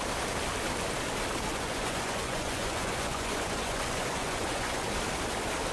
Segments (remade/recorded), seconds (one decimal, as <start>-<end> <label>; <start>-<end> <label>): 0.0-1.5 recorded; 1.5-4.9 remade; 4.9-5.7 recorded